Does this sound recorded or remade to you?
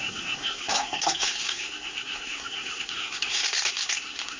remade